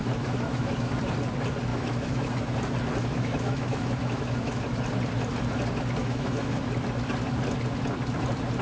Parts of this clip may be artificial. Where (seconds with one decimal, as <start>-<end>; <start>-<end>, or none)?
0.0-0.9; 1.7-2.5; 3.0-4.6; 6.0-6.6